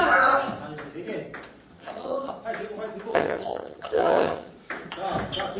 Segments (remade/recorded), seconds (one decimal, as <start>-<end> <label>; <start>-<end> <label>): 0.0-1.7 recorded; 1.7-2.3 remade; 2.3-3.1 recorded; 3.1-4.5 remade; 4.5-5.6 recorded